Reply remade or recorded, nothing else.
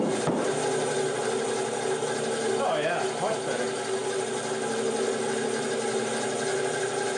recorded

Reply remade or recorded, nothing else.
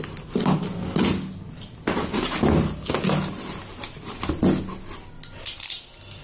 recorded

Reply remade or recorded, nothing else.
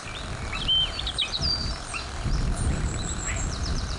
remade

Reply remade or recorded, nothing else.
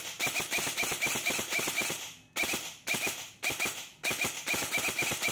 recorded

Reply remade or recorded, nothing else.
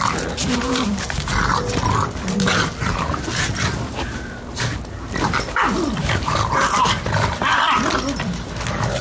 recorded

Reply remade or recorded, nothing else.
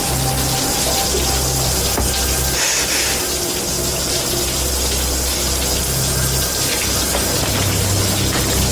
recorded